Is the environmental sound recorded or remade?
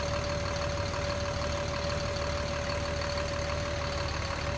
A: recorded